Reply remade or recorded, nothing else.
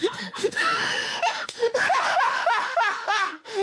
remade